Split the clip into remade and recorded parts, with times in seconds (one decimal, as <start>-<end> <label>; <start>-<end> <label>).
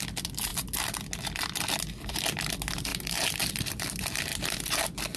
0.0-0.5 remade; 0.5-2.1 recorded; 2.1-4.3 remade; 4.3-5.2 recorded